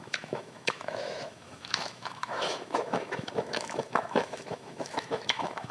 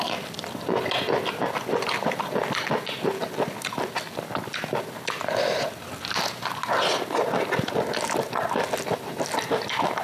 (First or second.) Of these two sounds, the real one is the second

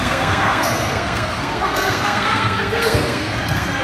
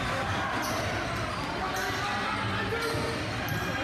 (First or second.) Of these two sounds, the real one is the second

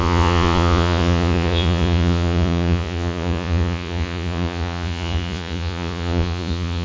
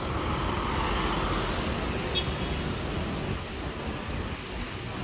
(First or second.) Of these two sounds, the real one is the second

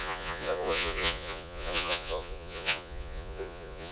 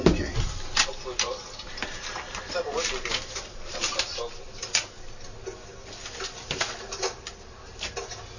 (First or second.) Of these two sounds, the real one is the second